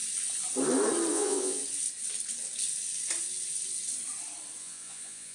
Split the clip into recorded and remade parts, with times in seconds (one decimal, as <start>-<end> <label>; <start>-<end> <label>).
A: 0.0-1.1 recorded; 1.1-1.6 remade; 1.6-4.6 recorded; 4.6-5.3 remade